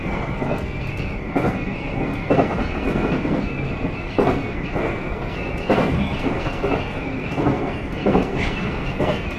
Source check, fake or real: fake